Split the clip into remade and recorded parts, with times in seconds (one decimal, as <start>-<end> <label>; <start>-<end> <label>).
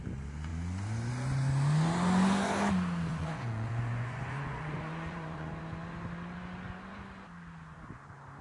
0.0-3.1 recorded; 3.1-5.6 remade; 5.6-8.4 recorded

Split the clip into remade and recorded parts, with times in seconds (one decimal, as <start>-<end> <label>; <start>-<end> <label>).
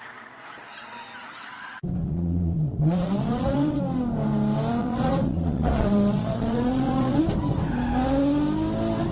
0.0-2.0 recorded; 2.0-3.8 remade; 3.8-4.8 recorded; 4.8-7.2 remade; 7.2-9.1 recorded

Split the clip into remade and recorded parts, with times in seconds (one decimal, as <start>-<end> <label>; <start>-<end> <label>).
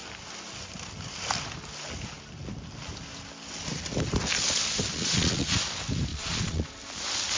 0.0-4.9 recorded; 4.9-5.6 remade; 5.6-6.1 recorded; 6.1-6.7 remade; 6.7-7.4 recorded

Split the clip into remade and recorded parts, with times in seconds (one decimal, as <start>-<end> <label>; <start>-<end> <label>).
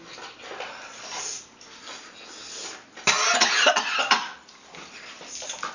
0.0-5.7 recorded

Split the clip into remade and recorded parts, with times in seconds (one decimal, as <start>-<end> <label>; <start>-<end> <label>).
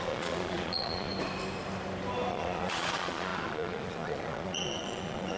0.0-1.1 remade; 1.1-2.3 recorded; 2.3-5.4 remade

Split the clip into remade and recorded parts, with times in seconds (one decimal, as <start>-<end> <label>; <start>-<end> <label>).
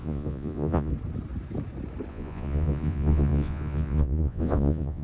0.0-0.9 remade; 0.9-2.1 recorded; 2.1-5.0 remade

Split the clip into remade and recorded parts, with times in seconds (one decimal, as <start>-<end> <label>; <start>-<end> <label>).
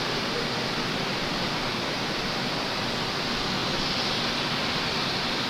0.0-5.5 recorded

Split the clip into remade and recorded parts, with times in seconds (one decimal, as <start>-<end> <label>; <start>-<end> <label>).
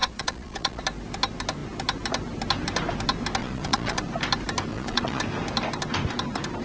0.0-0.8 remade; 0.8-3.4 recorded; 3.4-4.0 remade; 4.0-4.7 recorded; 4.7-5.2 remade; 5.2-6.6 recorded